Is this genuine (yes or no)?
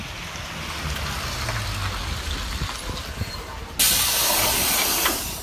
yes